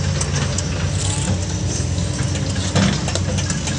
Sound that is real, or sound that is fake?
real